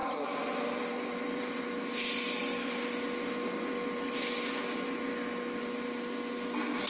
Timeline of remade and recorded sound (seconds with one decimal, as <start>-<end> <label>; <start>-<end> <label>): 0.0-1.6 remade; 1.6-6.9 recorded